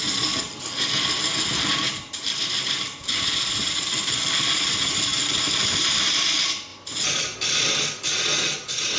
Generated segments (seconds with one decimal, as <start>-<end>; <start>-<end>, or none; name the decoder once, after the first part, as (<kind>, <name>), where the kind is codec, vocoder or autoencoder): 1.7-3.2 (vocoder, BigVGAN v2); 5.1-6.2; 6.7-7.2